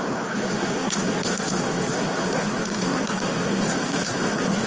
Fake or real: fake